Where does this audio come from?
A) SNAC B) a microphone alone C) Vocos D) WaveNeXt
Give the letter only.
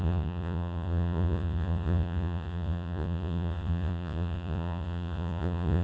C